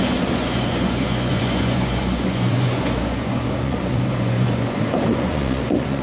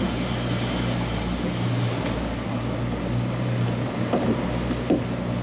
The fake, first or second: first